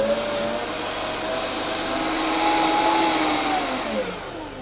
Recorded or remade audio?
recorded